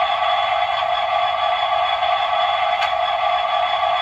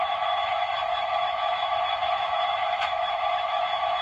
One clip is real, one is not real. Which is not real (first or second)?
second